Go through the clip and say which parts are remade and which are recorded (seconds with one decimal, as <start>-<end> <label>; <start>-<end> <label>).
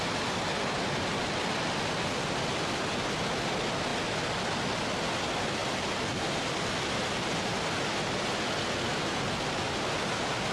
0.0-10.5 recorded